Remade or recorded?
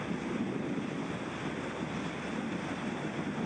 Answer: recorded